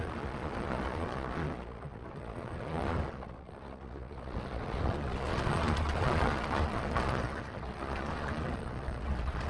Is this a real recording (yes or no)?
no